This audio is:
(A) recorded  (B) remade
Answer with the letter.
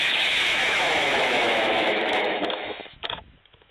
B